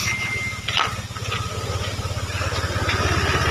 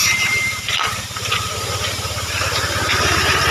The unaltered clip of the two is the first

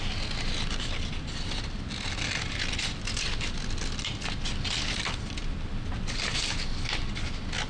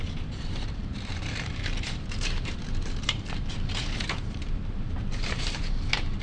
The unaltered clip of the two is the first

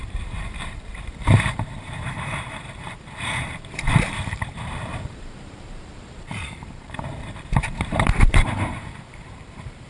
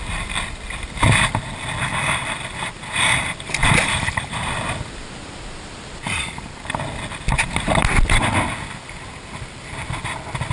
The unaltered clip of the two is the second